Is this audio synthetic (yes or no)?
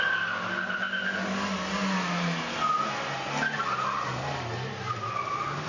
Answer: no